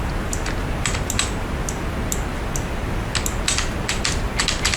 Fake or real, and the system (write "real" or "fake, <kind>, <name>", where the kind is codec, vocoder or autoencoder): real